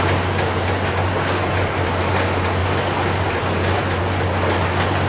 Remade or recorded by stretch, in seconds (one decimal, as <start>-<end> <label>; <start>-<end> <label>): 0.0-5.1 recorded